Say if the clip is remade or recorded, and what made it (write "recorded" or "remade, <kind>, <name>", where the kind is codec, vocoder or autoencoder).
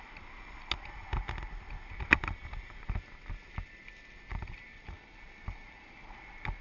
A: recorded